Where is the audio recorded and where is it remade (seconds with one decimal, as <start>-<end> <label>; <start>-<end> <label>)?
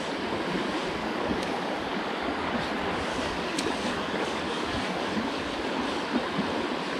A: 0.0-1.0 recorded; 1.0-2.6 remade; 2.6-3.1 recorded; 3.1-5.8 remade; 5.8-7.0 recorded